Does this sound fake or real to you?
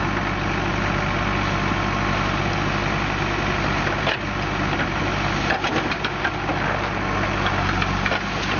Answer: real